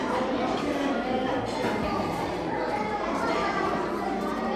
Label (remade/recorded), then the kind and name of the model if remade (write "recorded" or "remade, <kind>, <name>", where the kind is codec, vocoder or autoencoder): remade, vocoder, BigVGAN v2